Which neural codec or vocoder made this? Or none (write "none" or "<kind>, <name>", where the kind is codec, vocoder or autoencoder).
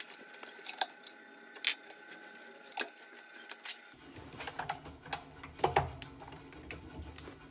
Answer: none